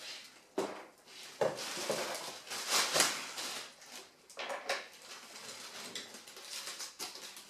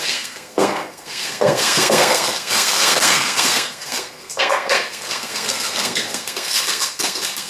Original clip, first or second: first